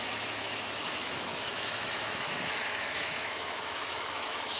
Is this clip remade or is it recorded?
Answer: remade